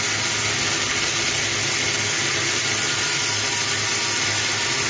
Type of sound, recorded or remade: recorded